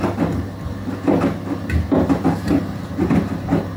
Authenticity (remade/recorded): recorded